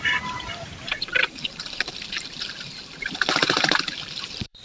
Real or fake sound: fake